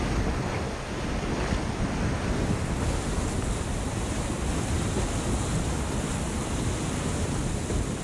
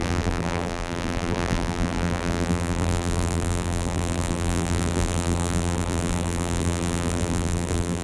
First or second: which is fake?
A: second